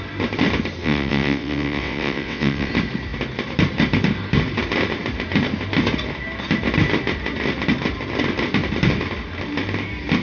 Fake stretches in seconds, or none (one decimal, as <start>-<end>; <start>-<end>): 0.8-2.7